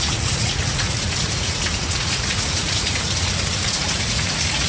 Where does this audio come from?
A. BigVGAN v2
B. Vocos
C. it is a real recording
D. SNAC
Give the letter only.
B